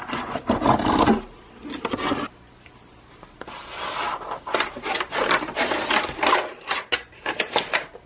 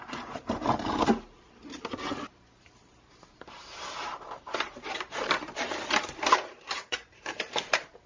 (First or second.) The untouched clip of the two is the first